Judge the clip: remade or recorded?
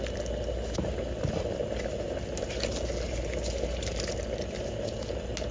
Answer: recorded